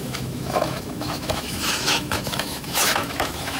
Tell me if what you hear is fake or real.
fake